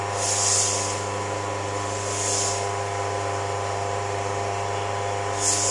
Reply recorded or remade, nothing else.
recorded